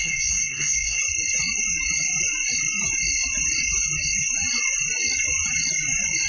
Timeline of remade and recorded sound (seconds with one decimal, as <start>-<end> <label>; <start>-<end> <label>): 0.0-1.0 remade; 1.0-6.3 recorded